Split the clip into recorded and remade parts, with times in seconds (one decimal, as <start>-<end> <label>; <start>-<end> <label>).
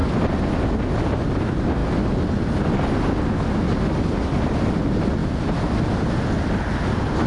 0.0-7.3 recorded